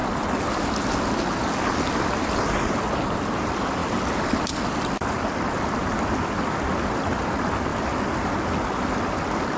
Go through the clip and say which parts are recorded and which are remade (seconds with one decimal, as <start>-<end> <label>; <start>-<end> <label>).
0.0-3.8 recorded; 3.8-7.2 remade; 7.2-9.6 recorded